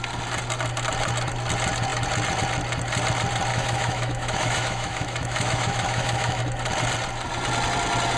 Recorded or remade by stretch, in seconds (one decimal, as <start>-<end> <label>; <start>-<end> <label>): 0.0-3.5 recorded; 3.5-6.4 remade; 6.4-8.2 recorded